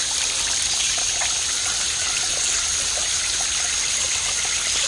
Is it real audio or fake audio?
real